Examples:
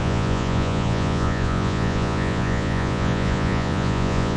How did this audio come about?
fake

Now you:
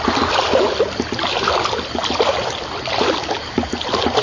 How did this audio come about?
real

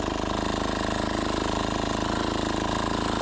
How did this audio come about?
real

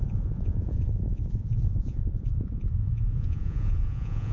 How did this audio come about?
fake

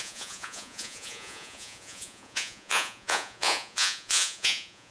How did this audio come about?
fake